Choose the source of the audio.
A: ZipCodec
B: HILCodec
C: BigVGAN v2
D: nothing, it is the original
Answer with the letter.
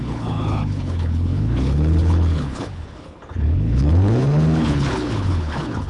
B